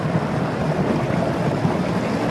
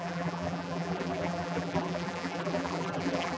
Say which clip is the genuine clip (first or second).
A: first